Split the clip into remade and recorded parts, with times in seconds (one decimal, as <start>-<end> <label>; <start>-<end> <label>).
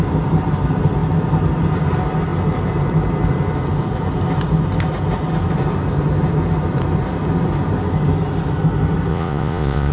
0.0-9.1 recorded; 9.1-9.9 remade